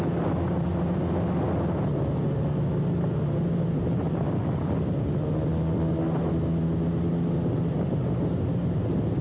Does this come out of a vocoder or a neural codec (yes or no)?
no